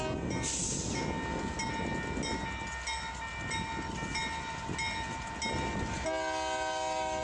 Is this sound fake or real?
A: real